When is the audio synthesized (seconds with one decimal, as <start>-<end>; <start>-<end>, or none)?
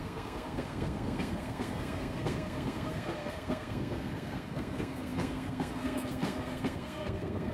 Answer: 0.0-7.5